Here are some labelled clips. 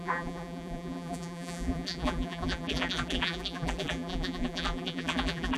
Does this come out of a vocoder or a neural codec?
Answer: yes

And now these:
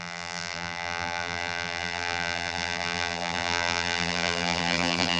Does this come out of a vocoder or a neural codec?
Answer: yes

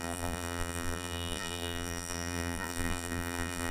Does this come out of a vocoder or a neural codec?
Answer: yes